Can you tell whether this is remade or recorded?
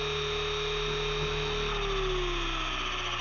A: recorded